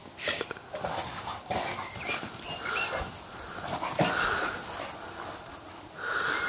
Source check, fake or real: real